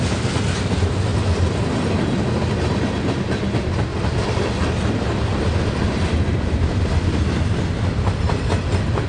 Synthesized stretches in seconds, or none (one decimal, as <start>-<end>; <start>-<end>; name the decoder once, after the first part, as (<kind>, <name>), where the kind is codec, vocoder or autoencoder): 1.1-1.6 (vocoder, BigVGAN v2); 3.9-4.5

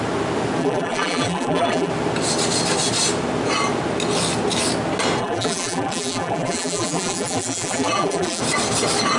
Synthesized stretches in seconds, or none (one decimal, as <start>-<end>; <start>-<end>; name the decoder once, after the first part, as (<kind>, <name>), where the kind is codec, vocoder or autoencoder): 0.6-1.9 (vocoder, BigVGAN v2); 5.2-8.4

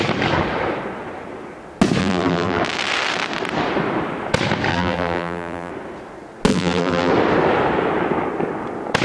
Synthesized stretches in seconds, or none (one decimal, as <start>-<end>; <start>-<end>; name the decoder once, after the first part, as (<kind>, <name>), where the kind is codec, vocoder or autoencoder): 2.0-2.6 (vocoder, BigVGAN v2); 4.7-5.7; 6.5-7.1

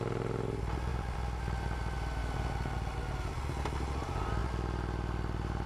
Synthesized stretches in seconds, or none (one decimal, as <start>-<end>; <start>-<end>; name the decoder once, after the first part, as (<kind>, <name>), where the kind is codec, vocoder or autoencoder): 0.9-1.6 (vocoder, BigVGAN v2)

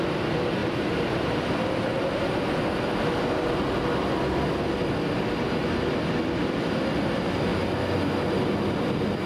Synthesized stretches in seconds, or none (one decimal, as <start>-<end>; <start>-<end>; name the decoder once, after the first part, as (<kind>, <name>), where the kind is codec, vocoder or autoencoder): 0.6-1.4 (vocoder, BigVGAN v2)

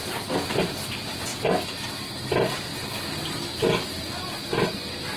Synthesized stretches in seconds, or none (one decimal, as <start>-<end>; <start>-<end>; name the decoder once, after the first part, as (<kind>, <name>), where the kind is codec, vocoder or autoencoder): 0.6-1.3 (vocoder, BigVGAN v2); 1.9-2.7; 4.1-5.2

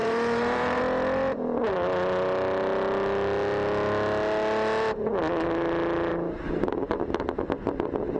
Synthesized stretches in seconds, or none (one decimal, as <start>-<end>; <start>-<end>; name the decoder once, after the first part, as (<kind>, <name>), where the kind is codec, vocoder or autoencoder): 0.0-0.8 (vocoder, BigVGAN v2); 6.1-7.0

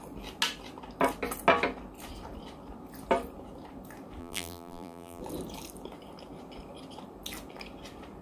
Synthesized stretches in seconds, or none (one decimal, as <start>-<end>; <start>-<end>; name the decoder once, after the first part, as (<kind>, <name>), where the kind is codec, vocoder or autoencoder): 4.2-5.2 (vocoder, BigVGAN v2)